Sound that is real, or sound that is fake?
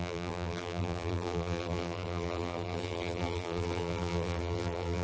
fake